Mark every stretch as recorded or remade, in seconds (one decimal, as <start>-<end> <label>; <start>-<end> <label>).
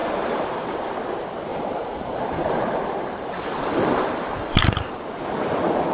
0.0-0.9 remade; 0.9-1.5 recorded; 1.5-5.0 remade; 5.0-5.9 recorded